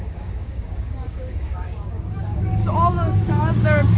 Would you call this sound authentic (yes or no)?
no